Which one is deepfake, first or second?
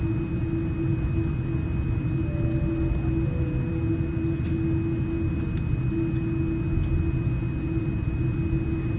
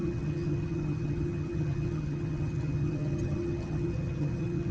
second